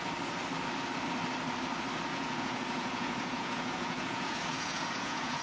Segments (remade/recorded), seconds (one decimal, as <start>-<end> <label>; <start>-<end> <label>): 0.0-2.1 recorded; 2.1-5.4 remade